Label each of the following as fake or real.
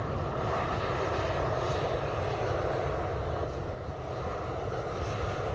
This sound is real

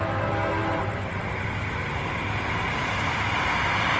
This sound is real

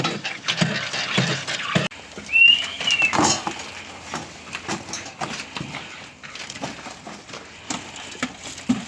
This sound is real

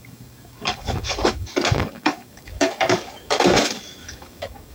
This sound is fake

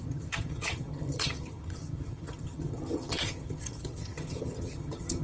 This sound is fake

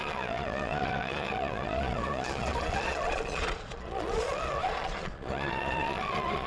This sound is fake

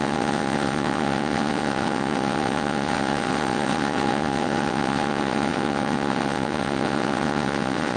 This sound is fake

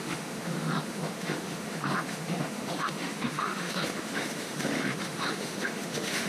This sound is fake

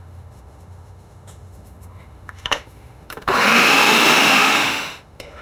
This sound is fake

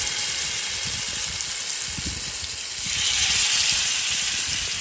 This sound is real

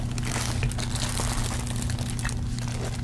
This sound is real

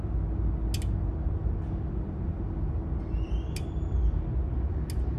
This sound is real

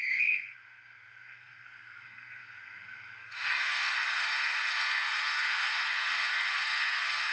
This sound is fake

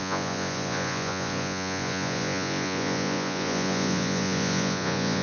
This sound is fake